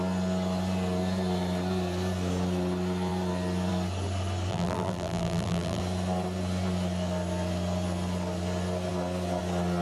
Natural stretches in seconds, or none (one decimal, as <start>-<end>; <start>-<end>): 0.0-4.5; 5.8-9.8